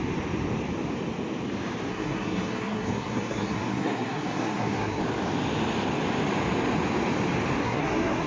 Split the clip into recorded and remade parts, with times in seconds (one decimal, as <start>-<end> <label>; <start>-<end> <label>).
0.0-1.9 recorded; 1.9-5.0 remade; 5.0-7.6 recorded; 7.6-8.3 remade